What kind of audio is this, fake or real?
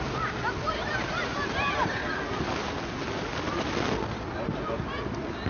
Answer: real